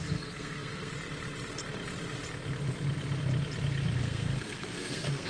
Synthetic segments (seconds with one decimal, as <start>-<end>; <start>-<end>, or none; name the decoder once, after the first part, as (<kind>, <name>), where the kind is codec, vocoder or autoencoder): 0.0-0.9 (codec, SNAC); 4.0-5.3